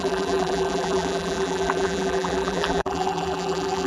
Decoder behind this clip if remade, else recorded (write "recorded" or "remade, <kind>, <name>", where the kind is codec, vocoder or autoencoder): remade, vocoder, BigVGAN v2